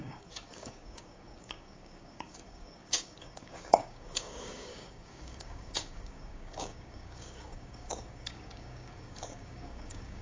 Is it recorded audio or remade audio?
remade